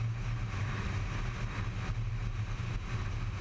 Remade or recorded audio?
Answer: recorded